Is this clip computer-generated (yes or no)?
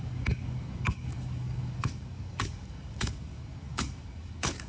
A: yes